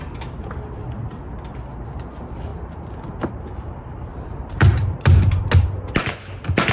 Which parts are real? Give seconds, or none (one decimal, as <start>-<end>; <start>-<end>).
0.0-4.1; 5.0-6.7

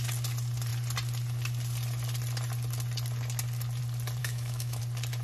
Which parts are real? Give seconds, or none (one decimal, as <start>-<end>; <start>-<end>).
0.0-4.2; 4.8-5.2

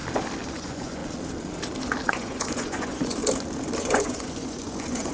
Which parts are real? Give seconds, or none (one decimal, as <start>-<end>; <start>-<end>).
0.0-0.5; 1.0-2.1; 3.2-3.8

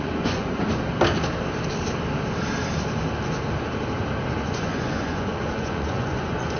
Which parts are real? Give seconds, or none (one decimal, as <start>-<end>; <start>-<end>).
0.6-4.4

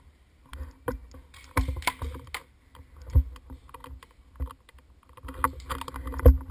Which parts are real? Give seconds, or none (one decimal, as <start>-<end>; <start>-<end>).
0.0-6.5

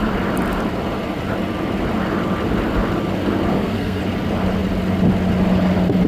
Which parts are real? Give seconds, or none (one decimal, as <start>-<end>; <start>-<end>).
0.0-3.5; 4.0-6.1